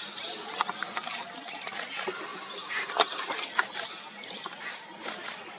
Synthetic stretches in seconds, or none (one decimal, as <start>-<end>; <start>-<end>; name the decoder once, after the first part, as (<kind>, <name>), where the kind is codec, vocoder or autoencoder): none

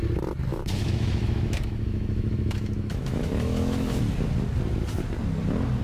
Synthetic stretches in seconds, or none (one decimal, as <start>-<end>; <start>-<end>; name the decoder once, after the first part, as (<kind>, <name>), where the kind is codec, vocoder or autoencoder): 0.5-4.0 (autoencoder, DAC-VAE)

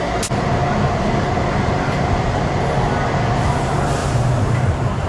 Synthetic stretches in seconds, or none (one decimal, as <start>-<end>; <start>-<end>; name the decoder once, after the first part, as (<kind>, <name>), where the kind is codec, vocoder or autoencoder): 4.0-5.1 (vocoder, BigVGAN v2)

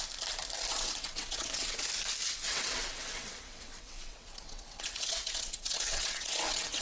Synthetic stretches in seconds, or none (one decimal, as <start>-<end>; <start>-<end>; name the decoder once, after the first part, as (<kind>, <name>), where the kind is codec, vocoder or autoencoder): 0.7-1.8 (vocoder, WaveNeXt); 2.4-6.8

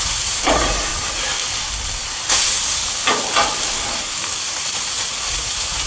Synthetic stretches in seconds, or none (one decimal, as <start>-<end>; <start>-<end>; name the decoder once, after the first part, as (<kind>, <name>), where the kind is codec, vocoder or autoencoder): 0.0-0.9 (vocoder, Vocos); 4.4-5.9

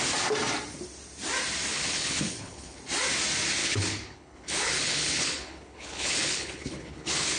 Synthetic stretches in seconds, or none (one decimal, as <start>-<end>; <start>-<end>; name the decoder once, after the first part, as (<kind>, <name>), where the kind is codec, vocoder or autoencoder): 1.7-2.8 (codec, HILCodec); 3.6-7.4

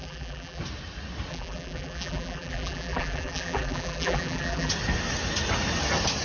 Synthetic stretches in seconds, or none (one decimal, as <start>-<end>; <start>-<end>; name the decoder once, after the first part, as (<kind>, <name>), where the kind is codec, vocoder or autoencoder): 0.0-0.6 (vocoder, BigVGAN v2); 1.3-4.7